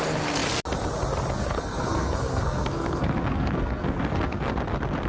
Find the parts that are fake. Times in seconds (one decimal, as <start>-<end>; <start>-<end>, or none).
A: 1.4-4.5